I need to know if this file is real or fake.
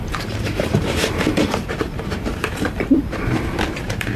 fake